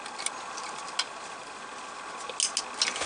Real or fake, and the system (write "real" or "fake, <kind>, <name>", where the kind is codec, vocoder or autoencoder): real